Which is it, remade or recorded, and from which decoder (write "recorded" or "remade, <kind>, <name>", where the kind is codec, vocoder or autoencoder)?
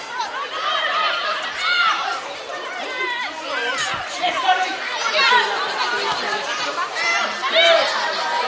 remade, vocoder, BigVGAN v2